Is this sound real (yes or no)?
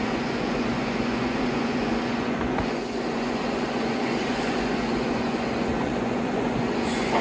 no